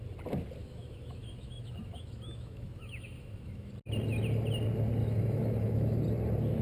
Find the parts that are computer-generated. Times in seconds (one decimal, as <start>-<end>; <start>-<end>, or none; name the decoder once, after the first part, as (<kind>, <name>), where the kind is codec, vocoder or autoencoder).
0.6-3.7 (autoencoder, DAC-VAE); 5.0-6.0